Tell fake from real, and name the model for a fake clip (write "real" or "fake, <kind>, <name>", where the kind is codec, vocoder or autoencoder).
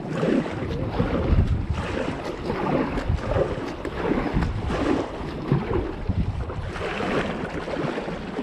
real